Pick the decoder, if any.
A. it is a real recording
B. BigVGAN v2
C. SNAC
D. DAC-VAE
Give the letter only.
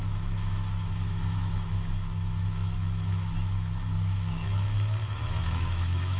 D